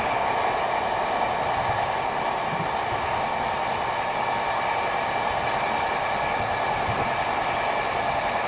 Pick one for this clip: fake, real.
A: real